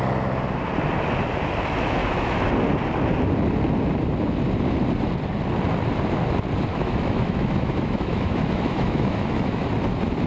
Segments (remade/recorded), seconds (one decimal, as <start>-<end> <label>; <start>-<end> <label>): 0.0-2.0 recorded; 2.0-2.5 remade; 2.5-6.7 recorded; 6.7-9.6 remade; 9.6-10.3 recorded